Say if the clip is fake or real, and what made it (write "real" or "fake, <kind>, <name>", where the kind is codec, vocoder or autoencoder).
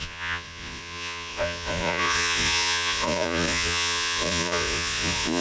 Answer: fake, vocoder, Vocos